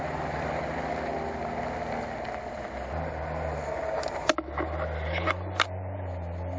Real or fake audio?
real